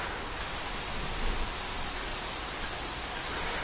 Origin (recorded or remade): recorded